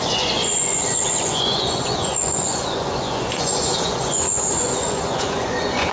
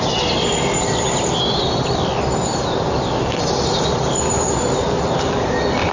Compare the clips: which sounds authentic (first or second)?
second